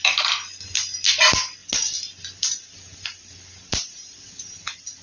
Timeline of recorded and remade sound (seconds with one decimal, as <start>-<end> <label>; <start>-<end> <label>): 0.0-5.0 recorded